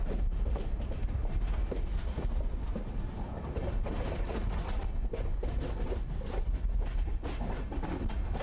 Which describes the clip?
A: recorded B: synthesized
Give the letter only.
A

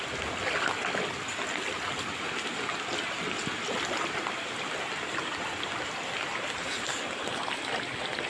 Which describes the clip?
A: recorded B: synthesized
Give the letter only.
A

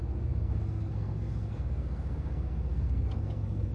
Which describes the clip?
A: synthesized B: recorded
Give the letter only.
A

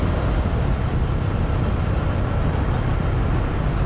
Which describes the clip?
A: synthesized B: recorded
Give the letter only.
B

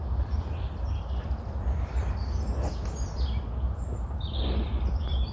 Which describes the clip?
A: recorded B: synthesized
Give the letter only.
A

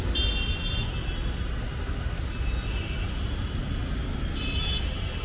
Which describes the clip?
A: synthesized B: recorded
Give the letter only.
B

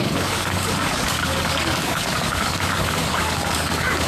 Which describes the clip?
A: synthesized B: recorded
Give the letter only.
A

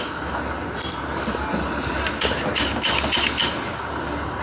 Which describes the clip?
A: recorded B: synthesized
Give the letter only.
A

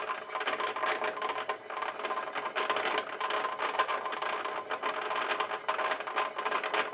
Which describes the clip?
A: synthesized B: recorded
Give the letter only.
B